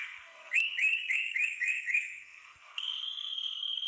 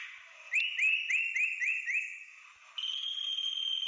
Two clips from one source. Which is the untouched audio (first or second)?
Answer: second